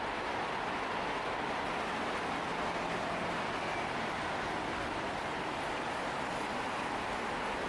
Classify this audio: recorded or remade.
recorded